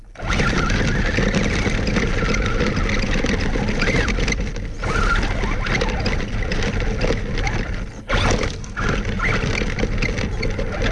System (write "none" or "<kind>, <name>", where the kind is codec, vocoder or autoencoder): none